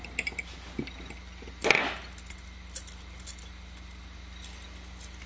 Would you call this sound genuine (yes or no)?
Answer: yes